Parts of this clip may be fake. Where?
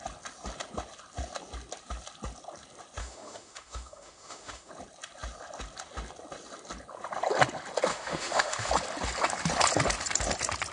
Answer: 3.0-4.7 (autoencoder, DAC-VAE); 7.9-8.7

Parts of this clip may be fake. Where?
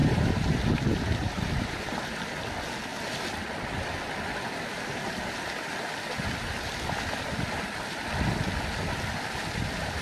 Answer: 0.0-2.0 (vocoder, BigVGAN v2)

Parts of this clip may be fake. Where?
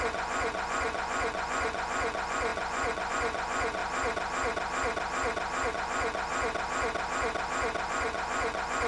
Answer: 0.0-3.8 (vocoder, Vocos); 5.7-6.3; 7.9-8.9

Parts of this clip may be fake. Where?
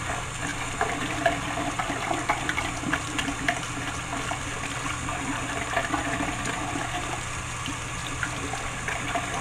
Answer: none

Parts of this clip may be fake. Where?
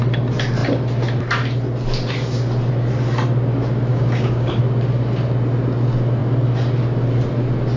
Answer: 3.9-4.6 (codec, DAC)